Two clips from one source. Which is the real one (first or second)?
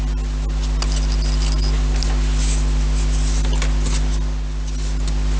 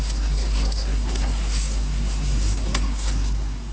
first